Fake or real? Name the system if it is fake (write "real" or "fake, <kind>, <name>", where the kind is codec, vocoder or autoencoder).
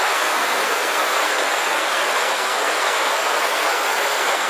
fake, codec, SNAC